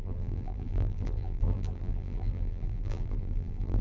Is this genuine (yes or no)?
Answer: no